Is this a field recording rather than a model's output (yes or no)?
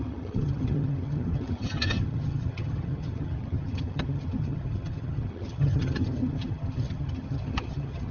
no